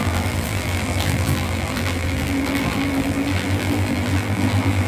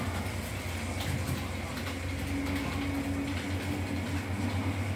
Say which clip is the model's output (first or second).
first